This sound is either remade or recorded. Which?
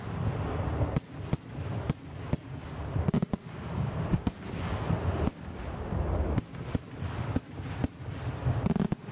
recorded